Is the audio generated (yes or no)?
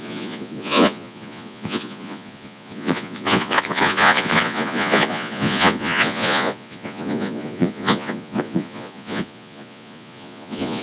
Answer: yes